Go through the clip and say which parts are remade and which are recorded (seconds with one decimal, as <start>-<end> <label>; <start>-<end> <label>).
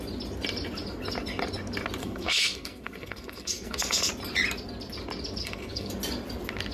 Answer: 0.0-2.0 recorded; 2.0-4.1 remade; 4.1-5.4 recorded; 5.4-5.9 remade; 5.9-6.7 recorded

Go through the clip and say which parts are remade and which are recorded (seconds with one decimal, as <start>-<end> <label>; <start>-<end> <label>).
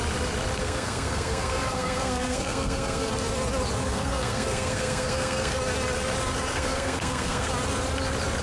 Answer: 0.0-0.6 recorded; 0.6-3.1 remade; 3.1-3.8 recorded; 3.8-5.6 remade; 5.6-6.5 recorded; 6.5-7.5 remade; 7.5-8.4 recorded